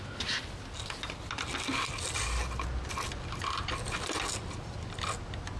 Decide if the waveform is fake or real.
real